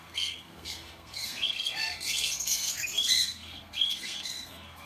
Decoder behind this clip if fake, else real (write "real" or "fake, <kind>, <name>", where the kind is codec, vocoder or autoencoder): fake, codec, SNAC